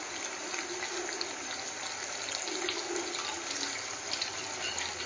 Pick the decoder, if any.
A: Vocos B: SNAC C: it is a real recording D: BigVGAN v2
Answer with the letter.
C